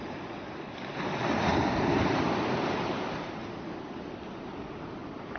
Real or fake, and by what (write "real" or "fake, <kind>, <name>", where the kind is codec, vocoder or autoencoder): real